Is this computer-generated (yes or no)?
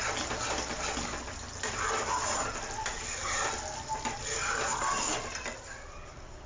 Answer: no